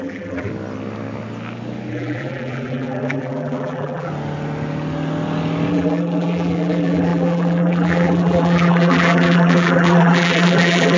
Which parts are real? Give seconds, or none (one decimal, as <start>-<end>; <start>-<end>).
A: 0.5-1.9; 4.1-5.7